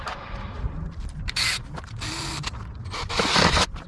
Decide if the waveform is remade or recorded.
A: remade